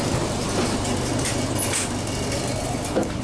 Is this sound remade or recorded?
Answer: recorded